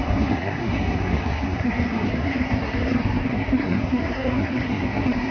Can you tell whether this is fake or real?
fake